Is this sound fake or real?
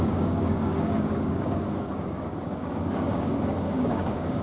fake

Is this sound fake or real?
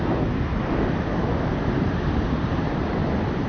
real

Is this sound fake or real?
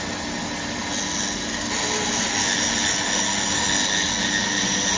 real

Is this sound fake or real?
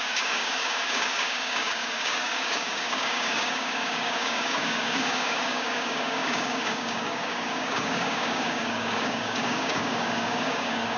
fake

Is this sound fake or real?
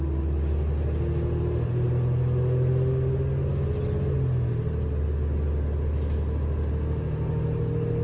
real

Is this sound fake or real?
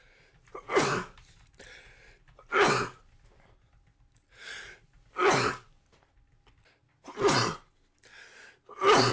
real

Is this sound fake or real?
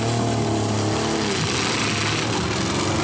real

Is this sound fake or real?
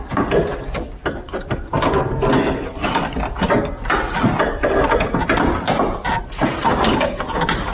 real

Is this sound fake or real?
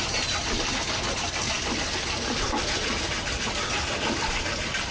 real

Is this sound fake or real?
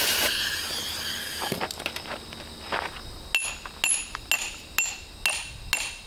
real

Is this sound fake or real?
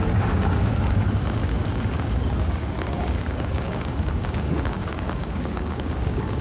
fake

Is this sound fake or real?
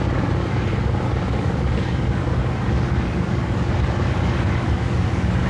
fake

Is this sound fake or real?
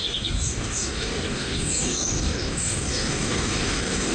fake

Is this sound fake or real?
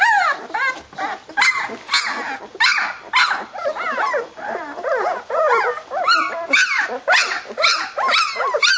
real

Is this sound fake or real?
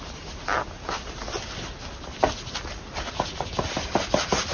real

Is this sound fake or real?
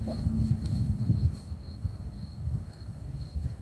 fake